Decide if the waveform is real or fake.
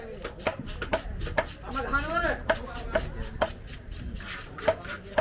real